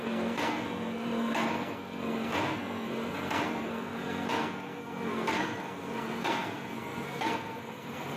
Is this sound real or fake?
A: fake